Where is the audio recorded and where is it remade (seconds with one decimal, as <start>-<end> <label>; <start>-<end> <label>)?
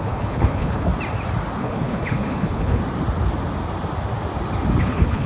0.0-0.9 remade; 0.9-1.6 recorded; 1.6-2.8 remade; 2.8-4.8 recorded; 4.8-5.3 remade